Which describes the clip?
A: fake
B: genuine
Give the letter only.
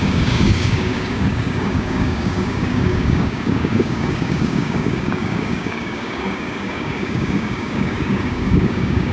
A